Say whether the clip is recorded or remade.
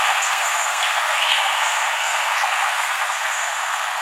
remade